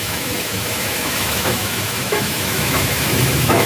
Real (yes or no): no